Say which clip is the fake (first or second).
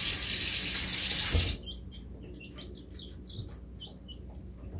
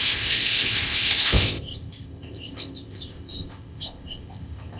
second